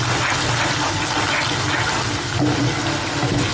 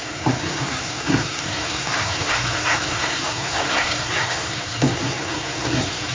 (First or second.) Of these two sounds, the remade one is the second